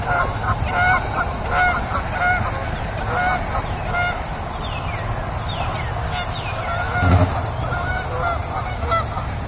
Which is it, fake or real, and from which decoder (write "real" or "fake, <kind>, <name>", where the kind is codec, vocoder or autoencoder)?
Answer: real